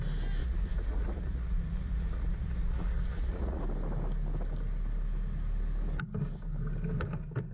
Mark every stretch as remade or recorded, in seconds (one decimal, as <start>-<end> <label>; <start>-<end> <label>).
0.0-0.4 recorded; 0.4-3.6 remade; 3.6-7.5 recorded